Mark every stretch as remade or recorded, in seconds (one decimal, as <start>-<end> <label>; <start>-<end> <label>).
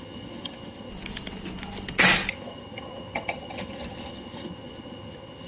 0.0-0.9 remade; 0.9-2.3 recorded; 2.3-5.5 remade